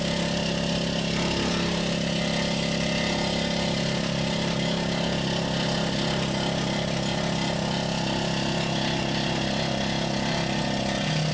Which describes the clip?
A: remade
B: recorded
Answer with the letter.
B